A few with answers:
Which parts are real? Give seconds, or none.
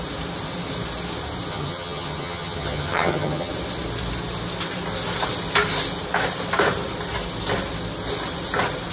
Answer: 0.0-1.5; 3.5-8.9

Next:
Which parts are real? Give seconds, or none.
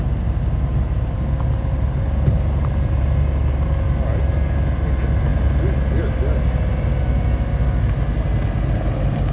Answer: 0.0-9.3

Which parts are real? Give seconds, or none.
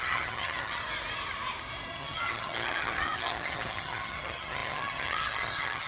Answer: 0.8-1.9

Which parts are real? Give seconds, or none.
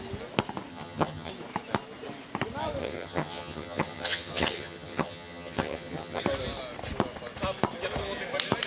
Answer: 0.0-0.7; 1.3-2.8; 6.2-8.7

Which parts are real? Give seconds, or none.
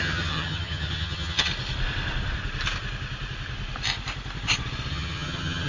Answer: 1.5-4.9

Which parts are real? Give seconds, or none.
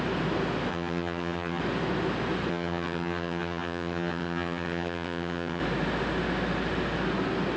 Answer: 0.0-0.7; 1.6-2.5; 5.6-7.6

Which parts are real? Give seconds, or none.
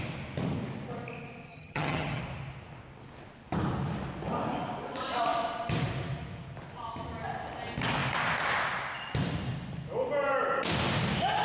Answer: 0.0-1.5; 2.2-11.4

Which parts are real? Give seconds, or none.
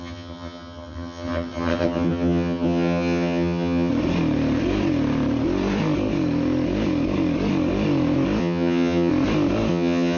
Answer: 3.9-8.4; 9.1-9.7